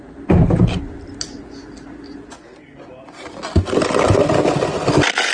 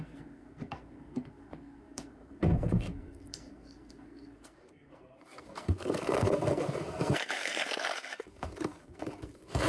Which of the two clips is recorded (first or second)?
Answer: first